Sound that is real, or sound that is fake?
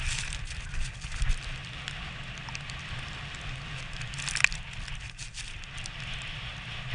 real